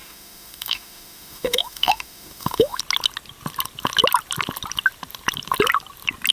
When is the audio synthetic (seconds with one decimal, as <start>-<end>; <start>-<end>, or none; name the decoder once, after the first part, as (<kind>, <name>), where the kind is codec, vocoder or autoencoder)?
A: 0.0-2.8 (autoencoder, DAC-VAE)